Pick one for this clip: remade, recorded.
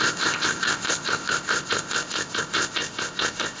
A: remade